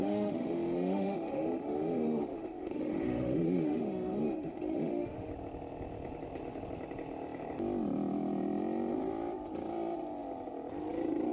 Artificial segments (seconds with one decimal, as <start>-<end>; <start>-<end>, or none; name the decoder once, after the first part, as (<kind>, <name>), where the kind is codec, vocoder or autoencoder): 0.0-5.3 (autoencoder, DAC-VAE)